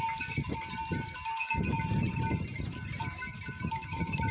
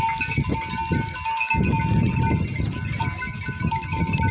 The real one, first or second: second